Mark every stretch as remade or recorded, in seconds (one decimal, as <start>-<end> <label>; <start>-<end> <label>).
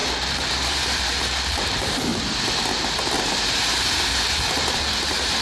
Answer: 0.0-2.1 remade; 2.1-5.0 recorded; 5.0-5.4 remade